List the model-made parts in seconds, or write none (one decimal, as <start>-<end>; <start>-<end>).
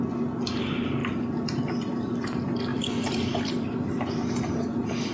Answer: 1.0-1.6; 2.7-5.1